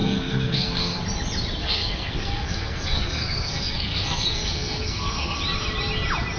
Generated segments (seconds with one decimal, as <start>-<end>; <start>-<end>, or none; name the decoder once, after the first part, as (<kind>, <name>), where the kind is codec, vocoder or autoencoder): 0.0-1.0 (codec, SNAC); 1.6-5.4